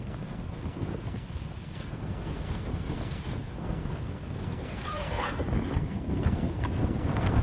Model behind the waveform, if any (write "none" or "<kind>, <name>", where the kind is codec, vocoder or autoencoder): codec, SNAC